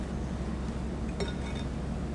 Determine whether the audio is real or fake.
real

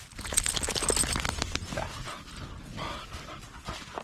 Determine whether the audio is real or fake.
real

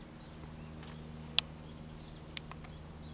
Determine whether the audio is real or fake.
real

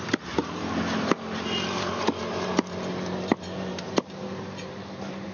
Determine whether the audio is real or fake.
fake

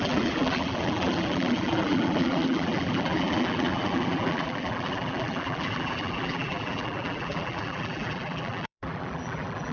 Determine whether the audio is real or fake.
fake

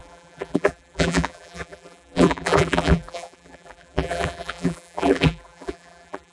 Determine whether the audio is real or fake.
fake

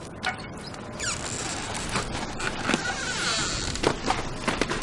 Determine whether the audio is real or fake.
real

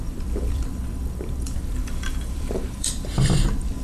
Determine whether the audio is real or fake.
fake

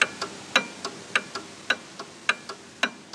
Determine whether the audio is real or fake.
real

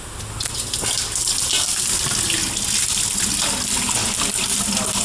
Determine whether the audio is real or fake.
real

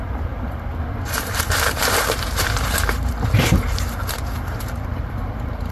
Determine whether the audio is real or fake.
fake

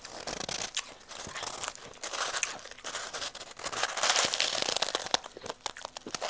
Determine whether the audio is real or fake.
real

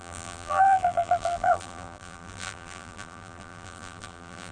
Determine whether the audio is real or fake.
fake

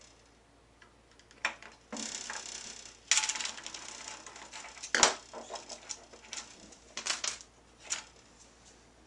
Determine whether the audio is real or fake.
real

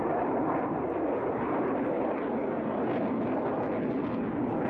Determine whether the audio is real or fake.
fake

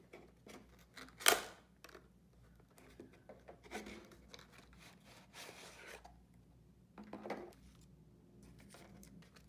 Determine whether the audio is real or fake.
real